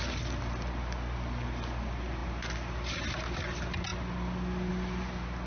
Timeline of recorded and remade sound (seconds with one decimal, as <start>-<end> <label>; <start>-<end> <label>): 0.0-5.5 recorded